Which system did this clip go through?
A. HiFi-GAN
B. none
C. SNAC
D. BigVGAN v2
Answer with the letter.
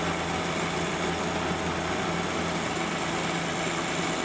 B